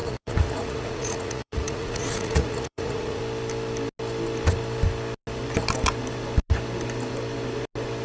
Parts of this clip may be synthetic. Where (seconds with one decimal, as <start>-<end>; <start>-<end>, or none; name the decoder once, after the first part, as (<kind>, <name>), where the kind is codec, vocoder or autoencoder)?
0.0-3.2 (vocoder, Vocos)